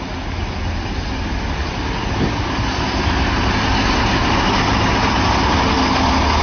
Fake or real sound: real